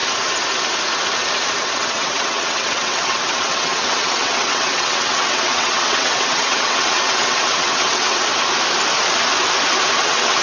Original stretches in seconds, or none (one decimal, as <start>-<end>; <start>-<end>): 0.0-1.6; 8.2-10.0